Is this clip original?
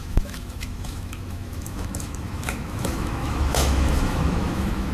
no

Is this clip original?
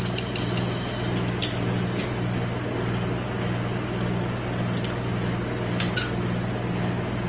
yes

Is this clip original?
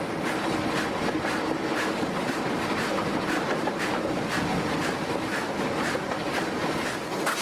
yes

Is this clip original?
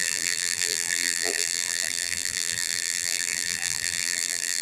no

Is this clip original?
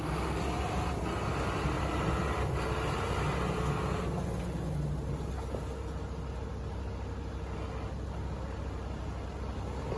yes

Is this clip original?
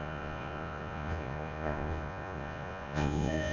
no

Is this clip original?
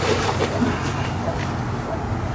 yes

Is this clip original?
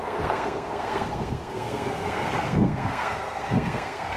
no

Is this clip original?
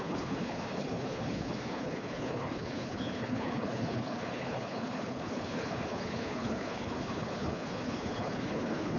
no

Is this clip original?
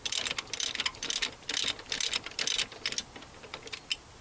yes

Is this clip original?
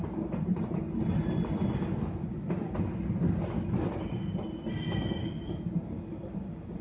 yes